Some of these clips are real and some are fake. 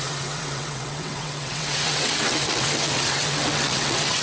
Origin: fake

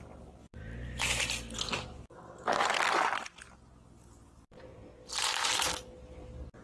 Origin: real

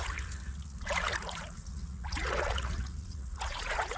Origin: fake